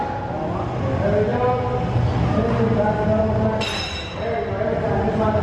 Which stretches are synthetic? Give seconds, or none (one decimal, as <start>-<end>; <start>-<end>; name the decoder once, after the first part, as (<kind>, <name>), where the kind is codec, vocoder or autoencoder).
none